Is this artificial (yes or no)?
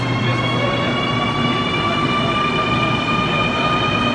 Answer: no